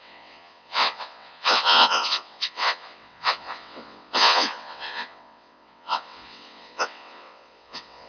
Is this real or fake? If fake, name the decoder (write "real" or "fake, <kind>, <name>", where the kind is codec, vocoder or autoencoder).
fake, vocoder, WaveNeXt